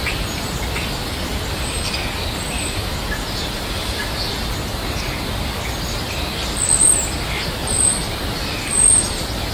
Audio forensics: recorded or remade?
recorded